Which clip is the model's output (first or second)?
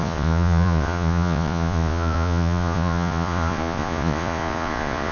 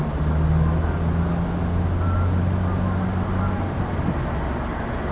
first